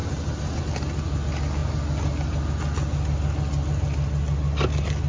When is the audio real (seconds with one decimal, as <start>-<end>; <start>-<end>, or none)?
0.6-5.1